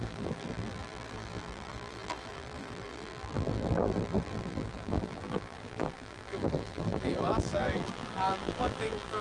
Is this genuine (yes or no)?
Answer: no